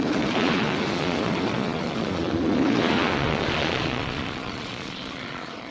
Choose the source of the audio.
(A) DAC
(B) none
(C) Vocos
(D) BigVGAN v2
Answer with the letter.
C